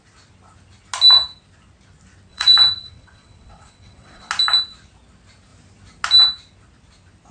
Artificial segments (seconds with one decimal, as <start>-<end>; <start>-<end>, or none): 2.3-4.3